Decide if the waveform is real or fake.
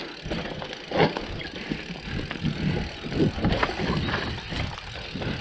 real